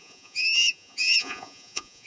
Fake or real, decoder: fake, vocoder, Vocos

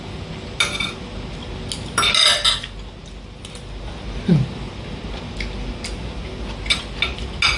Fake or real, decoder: real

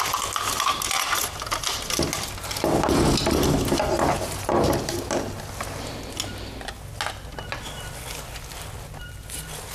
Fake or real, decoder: real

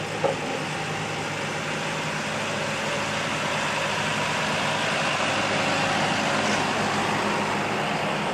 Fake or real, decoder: real